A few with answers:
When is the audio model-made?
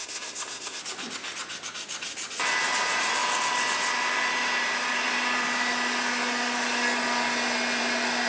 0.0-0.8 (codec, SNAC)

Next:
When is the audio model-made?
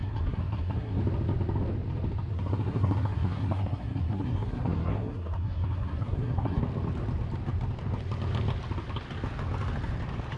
0.0-1.0 (codec, SNAC); 2.3-6.6